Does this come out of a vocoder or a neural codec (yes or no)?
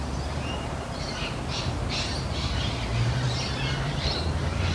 yes